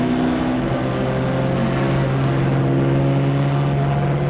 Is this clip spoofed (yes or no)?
no